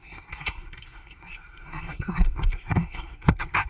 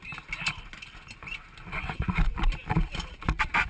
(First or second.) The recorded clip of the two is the second